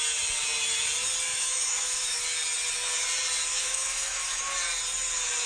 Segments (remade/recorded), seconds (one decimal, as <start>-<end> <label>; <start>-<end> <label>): 0.0-1.3 recorded; 1.3-2.2 remade; 2.2-3.5 recorded; 3.5-4.4 remade; 4.4-5.5 recorded